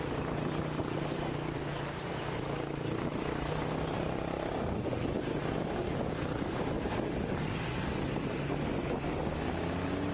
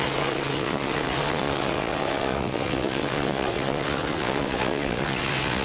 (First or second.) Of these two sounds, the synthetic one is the second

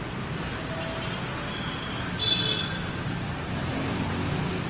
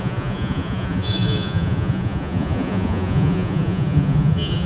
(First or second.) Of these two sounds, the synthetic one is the second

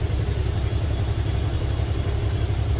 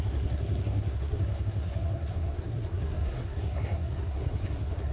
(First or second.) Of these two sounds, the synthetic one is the second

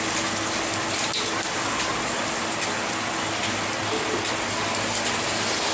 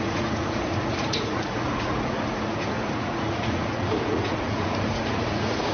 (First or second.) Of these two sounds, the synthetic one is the second